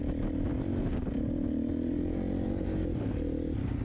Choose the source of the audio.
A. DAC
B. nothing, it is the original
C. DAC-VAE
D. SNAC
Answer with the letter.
B